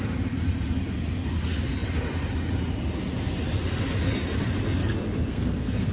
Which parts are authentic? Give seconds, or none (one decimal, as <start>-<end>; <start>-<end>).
0.0-4.8